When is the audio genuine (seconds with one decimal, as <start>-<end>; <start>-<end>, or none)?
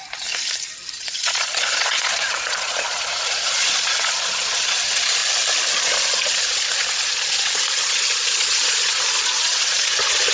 0.0-0.9; 5.2-5.7